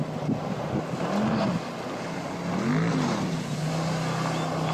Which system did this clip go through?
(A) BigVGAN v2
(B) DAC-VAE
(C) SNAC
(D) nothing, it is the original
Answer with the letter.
D